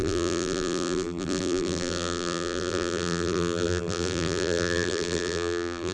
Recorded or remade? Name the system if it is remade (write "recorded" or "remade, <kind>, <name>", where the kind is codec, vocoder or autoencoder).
remade, vocoder, BigVGAN v2